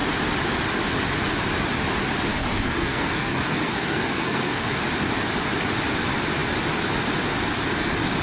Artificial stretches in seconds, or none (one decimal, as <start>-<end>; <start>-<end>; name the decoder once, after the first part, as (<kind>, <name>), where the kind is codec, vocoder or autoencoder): 2.3-4.7 (codec, SNAC)